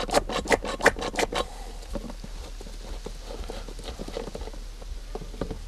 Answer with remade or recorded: recorded